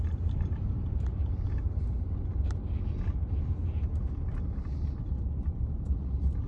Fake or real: real